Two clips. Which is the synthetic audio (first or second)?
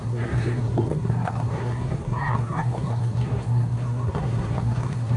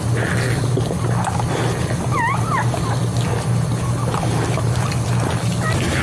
first